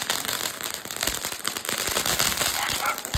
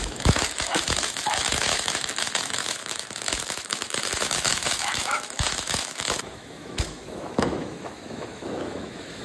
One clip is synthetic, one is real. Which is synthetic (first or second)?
second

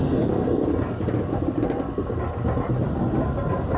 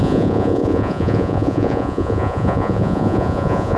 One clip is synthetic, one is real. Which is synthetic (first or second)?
second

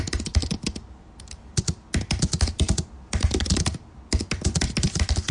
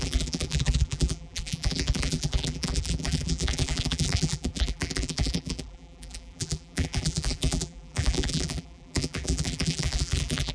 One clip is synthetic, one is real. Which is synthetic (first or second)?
second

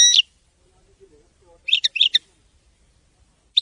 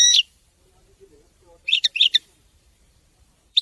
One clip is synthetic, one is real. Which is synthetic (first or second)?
second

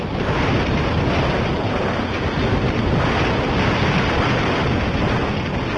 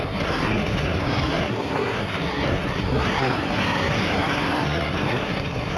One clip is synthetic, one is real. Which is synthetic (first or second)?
second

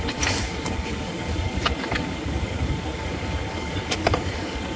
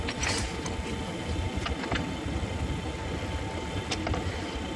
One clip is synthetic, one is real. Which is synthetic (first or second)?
first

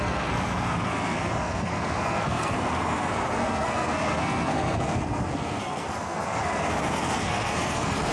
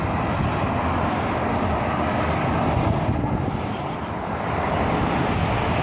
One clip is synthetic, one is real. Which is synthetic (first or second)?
first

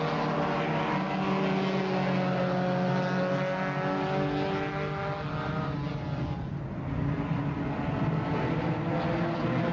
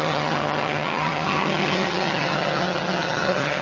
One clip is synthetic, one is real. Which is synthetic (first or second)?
second